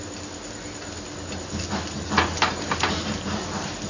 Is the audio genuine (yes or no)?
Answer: yes